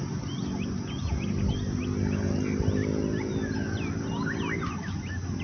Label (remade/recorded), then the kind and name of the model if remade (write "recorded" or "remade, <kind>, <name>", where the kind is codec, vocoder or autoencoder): recorded